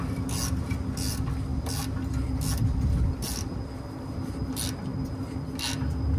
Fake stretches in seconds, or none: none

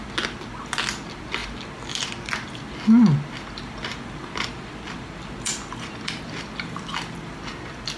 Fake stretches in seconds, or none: 3.9-6.9 (vocoder, BigVGAN v2)